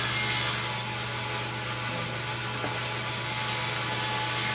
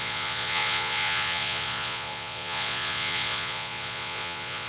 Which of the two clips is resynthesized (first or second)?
second